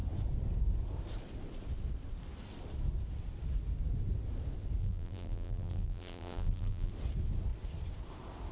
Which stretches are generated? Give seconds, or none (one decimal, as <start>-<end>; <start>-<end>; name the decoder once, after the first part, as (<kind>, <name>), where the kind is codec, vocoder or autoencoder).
4.8-6.9 (vocoder, BigVGAN v2)

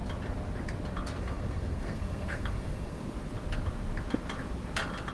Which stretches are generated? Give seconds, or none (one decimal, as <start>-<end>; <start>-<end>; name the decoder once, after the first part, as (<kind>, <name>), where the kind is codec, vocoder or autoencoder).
1.2-3.0 (codec, SNAC)

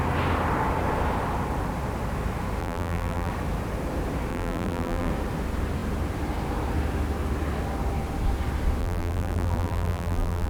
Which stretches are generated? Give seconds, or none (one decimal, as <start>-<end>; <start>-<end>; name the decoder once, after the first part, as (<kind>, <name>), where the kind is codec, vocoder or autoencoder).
2.6-3.3 (vocoder, BigVGAN v2); 4.3-5.1; 8.8-10.5

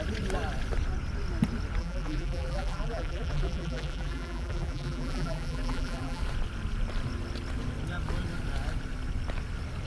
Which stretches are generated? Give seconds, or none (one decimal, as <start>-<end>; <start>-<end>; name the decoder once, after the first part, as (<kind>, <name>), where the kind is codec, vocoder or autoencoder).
1.8-6.2 (vocoder, BigVGAN v2)